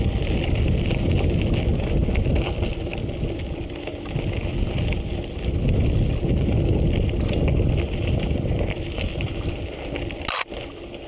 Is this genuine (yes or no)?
yes